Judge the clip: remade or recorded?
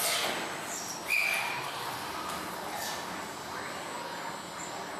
recorded